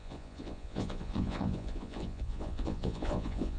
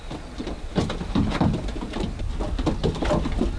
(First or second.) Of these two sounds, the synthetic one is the first